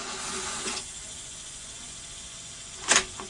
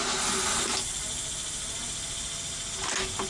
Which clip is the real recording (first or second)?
second